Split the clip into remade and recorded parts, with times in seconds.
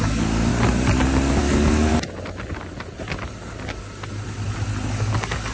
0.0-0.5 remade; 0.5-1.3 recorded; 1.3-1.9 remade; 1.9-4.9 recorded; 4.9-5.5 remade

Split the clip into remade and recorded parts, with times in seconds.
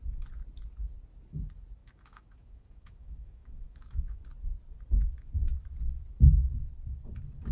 0.0-1.8 recorded; 1.8-4.2 remade; 4.2-7.5 recorded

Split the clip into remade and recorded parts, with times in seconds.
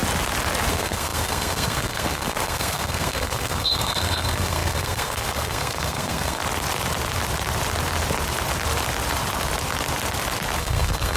0.0-0.7 recorded; 0.7-6.4 remade; 6.4-10.6 recorded; 10.6-11.2 remade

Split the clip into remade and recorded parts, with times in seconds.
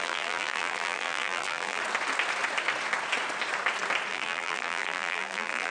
0.0-1.8 remade; 1.8-4.1 recorded; 4.1-5.7 remade